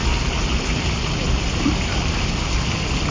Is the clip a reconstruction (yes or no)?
no